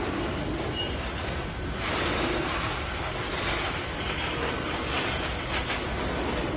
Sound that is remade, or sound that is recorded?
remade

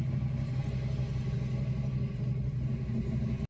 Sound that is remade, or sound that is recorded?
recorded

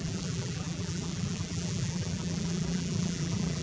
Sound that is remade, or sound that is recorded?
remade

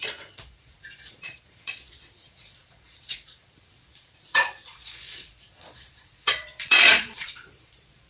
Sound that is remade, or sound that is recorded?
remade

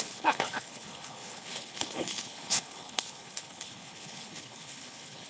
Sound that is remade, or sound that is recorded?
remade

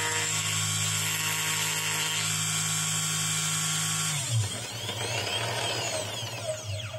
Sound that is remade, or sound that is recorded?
recorded